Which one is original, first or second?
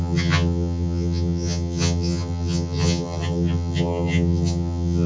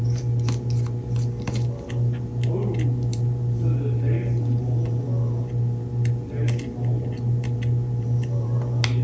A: second